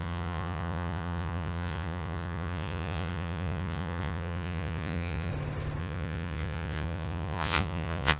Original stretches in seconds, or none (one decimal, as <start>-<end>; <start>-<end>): 5.3-5.8